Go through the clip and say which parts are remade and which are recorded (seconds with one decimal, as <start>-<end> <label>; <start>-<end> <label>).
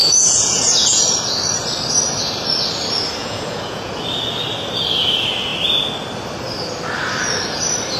0.0-1.0 remade; 1.0-3.2 recorded; 3.2-3.9 remade; 3.9-8.0 recorded